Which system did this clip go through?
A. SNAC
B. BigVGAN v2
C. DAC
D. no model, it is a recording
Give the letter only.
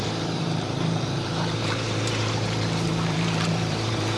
B